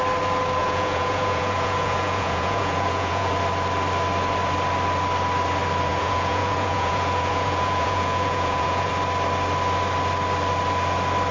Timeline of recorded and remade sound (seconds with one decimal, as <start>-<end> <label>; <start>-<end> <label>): 0.0-0.6 recorded; 0.6-3.3 remade; 3.3-5.9 recorded; 5.9-8.9 remade; 8.9-11.3 recorded